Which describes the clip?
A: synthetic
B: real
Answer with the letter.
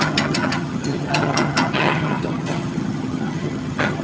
A